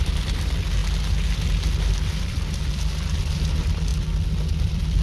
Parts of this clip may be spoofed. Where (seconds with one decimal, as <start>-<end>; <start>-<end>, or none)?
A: 0.0-0.8; 2.2-3.9; 4.6-5.0